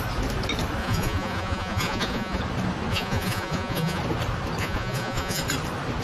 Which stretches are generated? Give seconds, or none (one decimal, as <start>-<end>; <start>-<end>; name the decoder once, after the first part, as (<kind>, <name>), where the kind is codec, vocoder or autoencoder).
0.8-2.4 (vocoder, Vocos); 2.9-4.0; 4.6-5.4